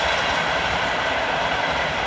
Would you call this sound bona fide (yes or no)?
yes